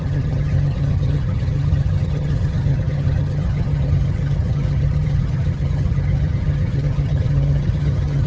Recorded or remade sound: remade